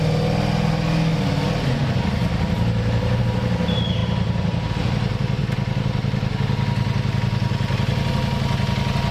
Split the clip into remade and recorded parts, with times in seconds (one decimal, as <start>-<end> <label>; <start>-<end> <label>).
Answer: 0.0-5.4 recorded; 5.4-6.3 remade; 6.3-9.1 recorded